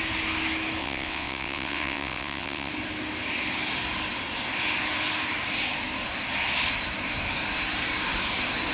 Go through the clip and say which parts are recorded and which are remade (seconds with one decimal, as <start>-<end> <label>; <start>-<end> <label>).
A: 0.0-0.8 recorded; 0.8-2.7 remade; 2.7-8.7 recorded